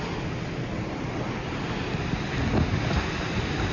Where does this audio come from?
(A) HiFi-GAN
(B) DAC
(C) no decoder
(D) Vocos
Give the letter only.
C